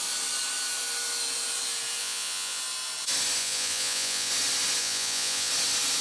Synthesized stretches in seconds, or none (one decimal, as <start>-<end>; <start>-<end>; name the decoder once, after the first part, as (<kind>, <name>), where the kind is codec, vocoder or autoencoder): 2.0-2.6 (vocoder, Vocos); 3.4-4.3; 4.8-5.5